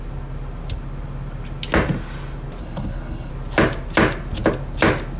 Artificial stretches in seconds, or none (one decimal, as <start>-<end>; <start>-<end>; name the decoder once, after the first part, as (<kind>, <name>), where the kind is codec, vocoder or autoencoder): 2.6-3.3 (codec, HILCodec)